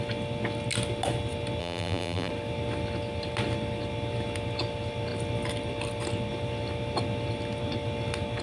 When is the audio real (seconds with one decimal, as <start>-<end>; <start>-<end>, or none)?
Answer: 0.0-1.6; 2.3-8.4